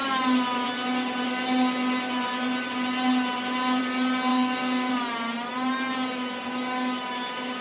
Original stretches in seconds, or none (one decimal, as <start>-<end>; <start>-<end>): 0.0-4.3; 4.9-7.6